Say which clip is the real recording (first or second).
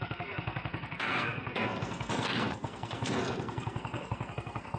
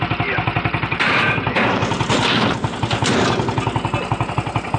second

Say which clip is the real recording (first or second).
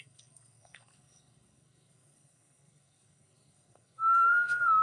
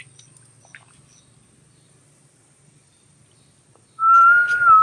second